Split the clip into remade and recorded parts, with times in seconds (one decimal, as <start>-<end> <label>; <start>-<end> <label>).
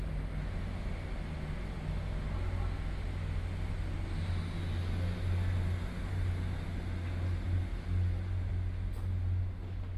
0.0-10.0 recorded